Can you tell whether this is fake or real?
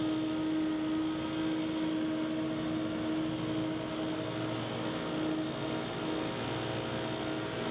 real